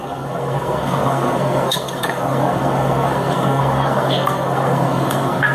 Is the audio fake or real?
fake